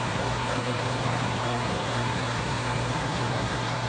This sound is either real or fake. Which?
fake